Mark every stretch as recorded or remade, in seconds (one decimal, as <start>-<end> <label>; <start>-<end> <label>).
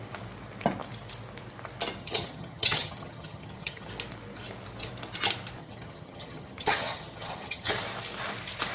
0.0-2.0 recorded; 2.0-3.9 remade; 3.9-5.6 recorded; 5.6-7.7 remade; 7.7-8.7 recorded